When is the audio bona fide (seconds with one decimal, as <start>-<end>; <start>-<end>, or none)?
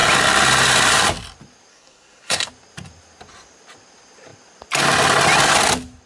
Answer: 0.0-1.7; 2.5-6.1